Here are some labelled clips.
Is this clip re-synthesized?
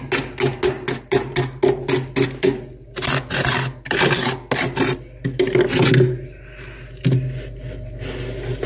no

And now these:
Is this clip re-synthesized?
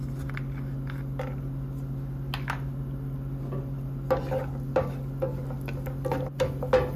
no